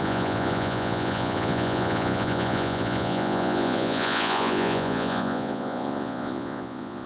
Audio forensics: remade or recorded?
remade